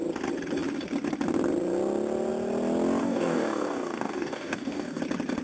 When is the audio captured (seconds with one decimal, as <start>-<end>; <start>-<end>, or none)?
0.0-3.0; 5.0-5.4